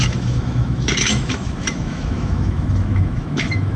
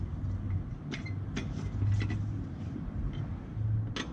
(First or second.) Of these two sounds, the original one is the second